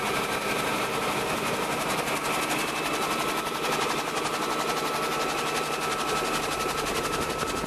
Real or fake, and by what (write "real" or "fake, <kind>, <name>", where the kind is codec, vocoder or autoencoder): real